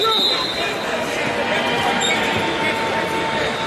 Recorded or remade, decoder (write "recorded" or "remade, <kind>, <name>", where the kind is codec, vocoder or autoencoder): recorded